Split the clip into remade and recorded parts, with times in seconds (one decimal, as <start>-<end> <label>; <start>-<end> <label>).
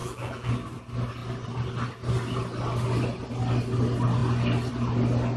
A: 0.0-0.5 remade; 0.5-5.4 recorded